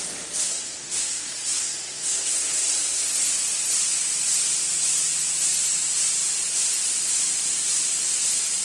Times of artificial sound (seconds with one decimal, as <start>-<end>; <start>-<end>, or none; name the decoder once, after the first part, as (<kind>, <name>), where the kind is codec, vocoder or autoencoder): 0.5-3.3 (codec, SNAC)